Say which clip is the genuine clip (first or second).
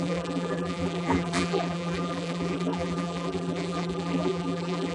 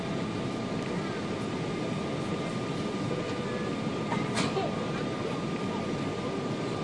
second